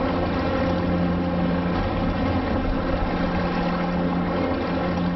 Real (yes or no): yes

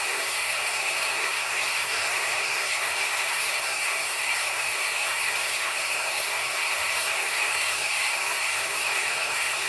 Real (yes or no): no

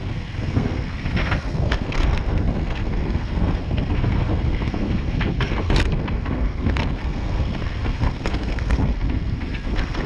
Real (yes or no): no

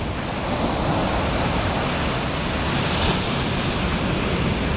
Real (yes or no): no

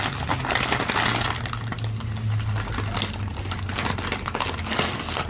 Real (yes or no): yes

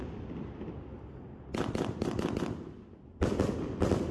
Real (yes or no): yes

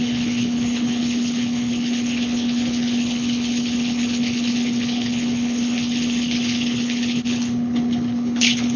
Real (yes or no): no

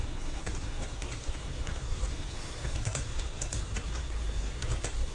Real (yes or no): no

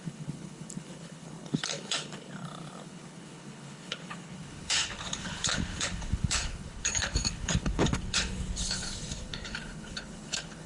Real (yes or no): no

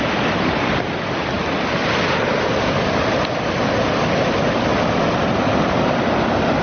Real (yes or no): yes